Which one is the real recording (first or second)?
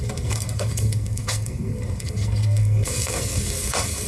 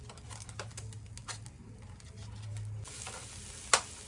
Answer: second